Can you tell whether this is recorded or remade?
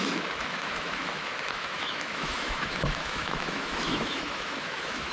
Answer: remade